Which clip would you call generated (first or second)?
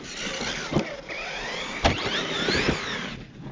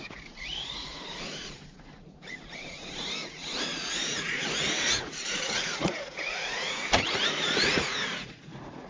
second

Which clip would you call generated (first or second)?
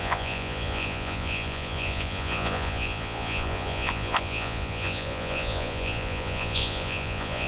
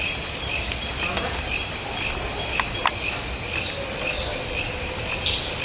first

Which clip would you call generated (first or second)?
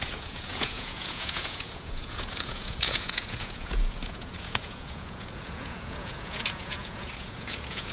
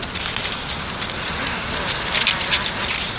first